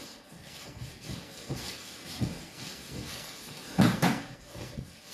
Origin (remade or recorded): remade